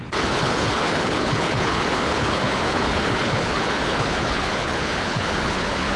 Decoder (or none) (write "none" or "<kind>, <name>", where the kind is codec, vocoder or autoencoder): codec, HILCodec